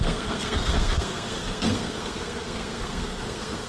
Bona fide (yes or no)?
no